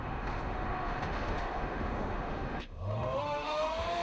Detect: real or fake fake